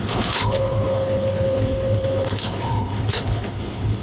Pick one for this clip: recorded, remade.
remade